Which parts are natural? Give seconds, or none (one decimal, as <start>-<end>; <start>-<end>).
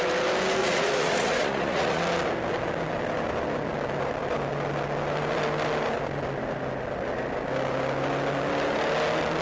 0.0-0.6; 2.0-9.4